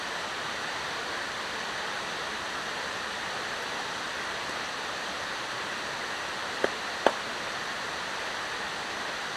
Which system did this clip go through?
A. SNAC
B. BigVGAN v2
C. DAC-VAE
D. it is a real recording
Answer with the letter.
B